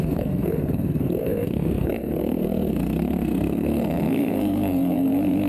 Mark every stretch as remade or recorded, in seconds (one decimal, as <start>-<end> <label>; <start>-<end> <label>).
0.0-5.5 remade